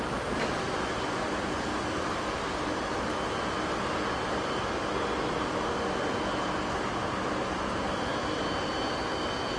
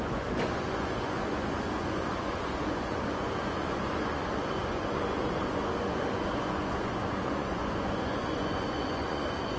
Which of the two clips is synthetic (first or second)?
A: second